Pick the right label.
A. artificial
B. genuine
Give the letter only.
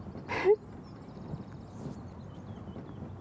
B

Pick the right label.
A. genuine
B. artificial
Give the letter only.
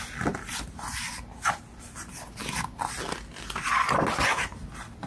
A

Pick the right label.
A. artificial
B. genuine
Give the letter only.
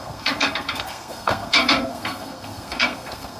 A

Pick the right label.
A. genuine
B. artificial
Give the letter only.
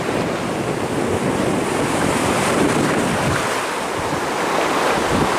A